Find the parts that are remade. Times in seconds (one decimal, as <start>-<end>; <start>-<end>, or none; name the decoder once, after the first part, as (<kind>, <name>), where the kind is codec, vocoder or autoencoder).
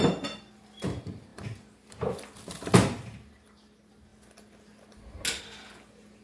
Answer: none